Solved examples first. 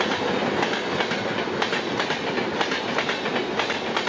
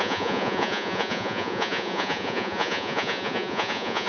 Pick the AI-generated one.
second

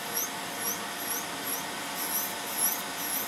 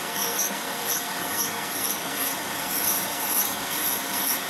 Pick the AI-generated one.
second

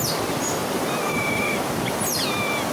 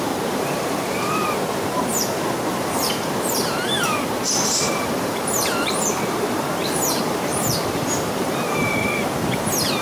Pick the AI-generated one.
second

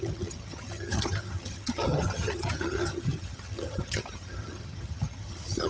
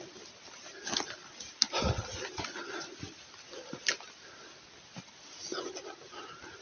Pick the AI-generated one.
first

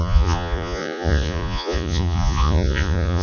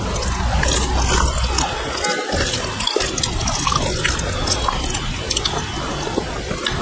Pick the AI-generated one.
first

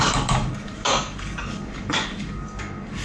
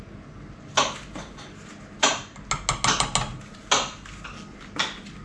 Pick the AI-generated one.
first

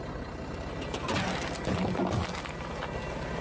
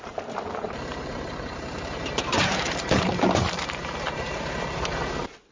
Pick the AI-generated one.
second